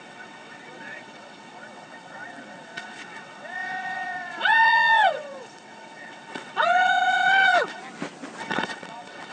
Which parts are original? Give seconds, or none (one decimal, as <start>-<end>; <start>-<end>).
7.8-8.4